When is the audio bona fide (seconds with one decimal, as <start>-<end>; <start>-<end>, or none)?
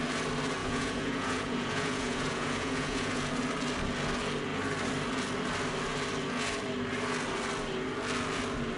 0.0-0.6; 3.3-8.8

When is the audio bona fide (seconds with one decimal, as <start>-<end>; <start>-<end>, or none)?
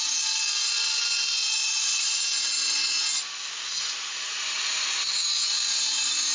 0.0-1.6; 2.2-6.3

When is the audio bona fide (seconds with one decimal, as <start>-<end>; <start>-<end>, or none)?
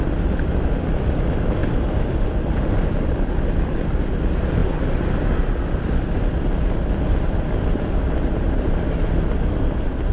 0.0-10.1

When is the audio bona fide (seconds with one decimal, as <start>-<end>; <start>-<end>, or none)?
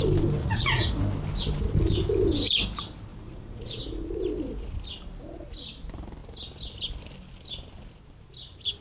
0.0-0.4; 0.9-3.1; 3.8-8.8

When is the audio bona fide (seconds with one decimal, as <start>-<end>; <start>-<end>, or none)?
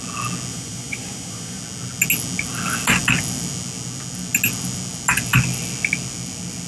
0.0-0.5; 1.6-6.7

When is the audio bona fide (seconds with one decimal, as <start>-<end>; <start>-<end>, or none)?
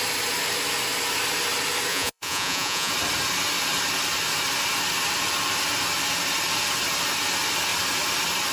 0.0-1.9; 2.9-8.5